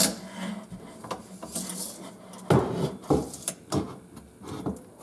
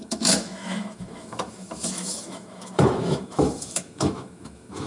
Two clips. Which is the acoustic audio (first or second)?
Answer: first